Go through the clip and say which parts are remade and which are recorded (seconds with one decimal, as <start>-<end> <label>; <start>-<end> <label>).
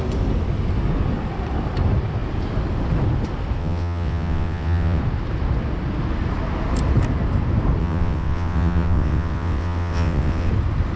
0.0-3.6 recorded; 3.6-5.0 remade; 5.0-7.8 recorded; 7.8-10.5 remade; 10.5-11.0 recorded